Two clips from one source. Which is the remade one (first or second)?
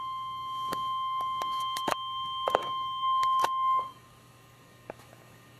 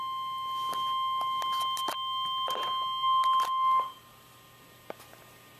first